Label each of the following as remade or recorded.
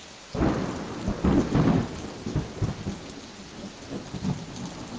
recorded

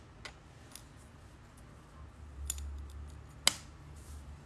recorded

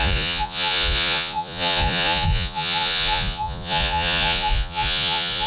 remade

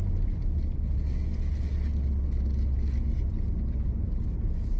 recorded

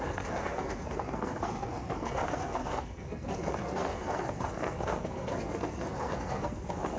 remade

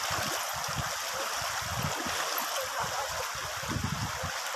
recorded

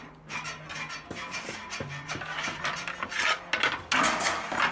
recorded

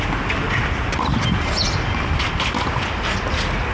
recorded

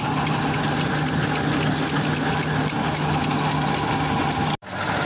recorded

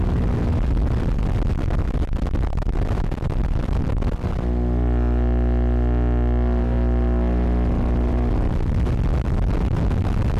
recorded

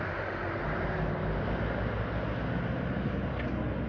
recorded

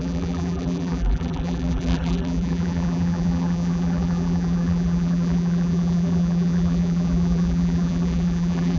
remade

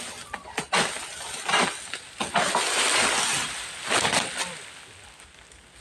recorded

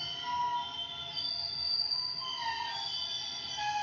recorded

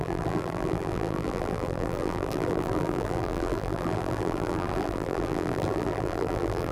remade